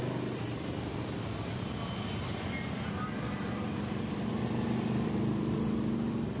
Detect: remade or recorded recorded